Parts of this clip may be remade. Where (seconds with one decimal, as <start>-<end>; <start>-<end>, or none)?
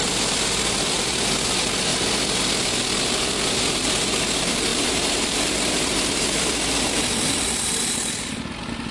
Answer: 0.0-1.9; 3.0-8.9